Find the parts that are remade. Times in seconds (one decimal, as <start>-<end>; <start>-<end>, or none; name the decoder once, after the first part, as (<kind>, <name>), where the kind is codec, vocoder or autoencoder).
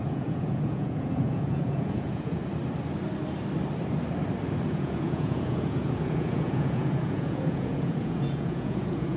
0.0-2.4 (vocoder, Vocos); 4.7-9.2